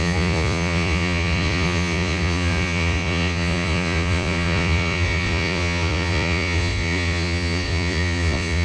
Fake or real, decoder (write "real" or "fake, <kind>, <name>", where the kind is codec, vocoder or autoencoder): fake, vocoder, Vocos